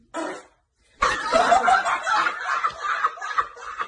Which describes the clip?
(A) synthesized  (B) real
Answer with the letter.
B